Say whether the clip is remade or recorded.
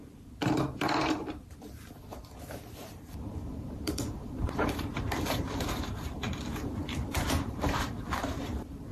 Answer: remade